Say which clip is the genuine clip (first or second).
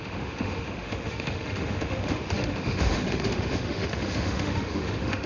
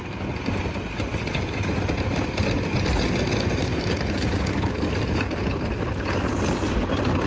second